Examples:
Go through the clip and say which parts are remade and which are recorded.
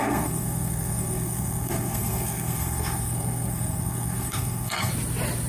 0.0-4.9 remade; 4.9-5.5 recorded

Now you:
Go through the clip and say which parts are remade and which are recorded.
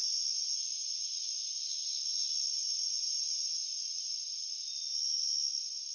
0.0-2.6 recorded; 2.6-4.1 remade; 4.1-5.9 recorded